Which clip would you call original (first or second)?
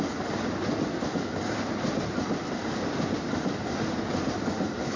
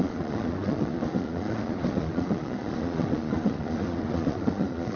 first